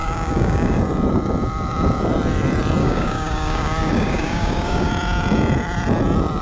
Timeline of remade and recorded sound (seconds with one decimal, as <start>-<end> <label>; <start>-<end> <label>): 0.0-0.8 remade; 0.8-2.8 recorded; 2.8-4.9 remade; 4.9-6.4 recorded